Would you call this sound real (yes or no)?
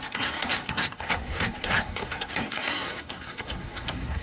no